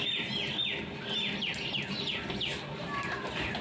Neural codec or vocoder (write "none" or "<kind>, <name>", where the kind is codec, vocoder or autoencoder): none